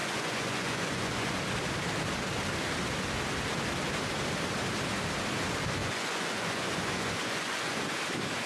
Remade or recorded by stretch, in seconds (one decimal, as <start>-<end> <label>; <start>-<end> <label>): 0.0-1.4 remade; 1.4-5.8 recorded; 5.8-7.8 remade; 7.8-8.5 recorded

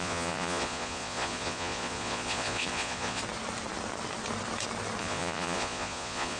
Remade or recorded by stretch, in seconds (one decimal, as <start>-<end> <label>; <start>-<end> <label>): 0.0-3.2 remade; 3.2-5.0 recorded; 5.0-6.4 remade

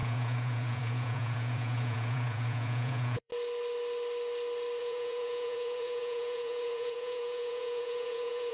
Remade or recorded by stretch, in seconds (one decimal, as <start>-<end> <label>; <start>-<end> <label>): 0.0-3.3 remade; 3.3-4.8 recorded; 4.8-8.5 remade

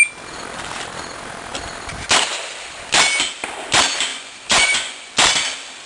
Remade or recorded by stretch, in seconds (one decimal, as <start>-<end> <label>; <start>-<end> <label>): 0.0-4.1 recorded; 4.1-5.1 remade; 5.1-5.9 recorded

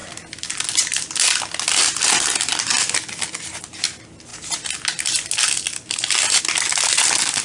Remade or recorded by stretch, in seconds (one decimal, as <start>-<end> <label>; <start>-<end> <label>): 0.0-7.4 recorded

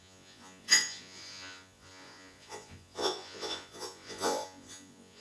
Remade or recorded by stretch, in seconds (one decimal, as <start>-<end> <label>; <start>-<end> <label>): 0.0-5.2 remade

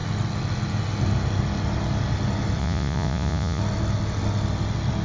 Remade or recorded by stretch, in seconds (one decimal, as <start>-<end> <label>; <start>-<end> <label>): 0.0-2.6 recorded; 2.6-3.6 remade; 3.6-5.0 recorded

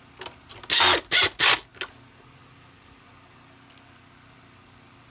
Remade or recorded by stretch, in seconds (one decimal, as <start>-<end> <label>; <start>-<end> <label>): 0.0-5.1 recorded